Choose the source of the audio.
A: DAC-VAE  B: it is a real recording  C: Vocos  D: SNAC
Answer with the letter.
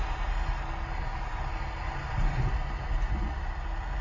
B